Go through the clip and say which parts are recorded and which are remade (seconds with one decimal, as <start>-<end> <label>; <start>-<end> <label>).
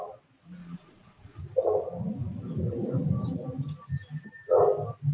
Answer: 0.0-0.6 recorded; 0.6-1.4 remade; 1.4-5.1 recorded